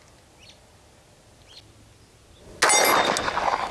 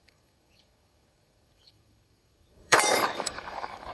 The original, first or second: first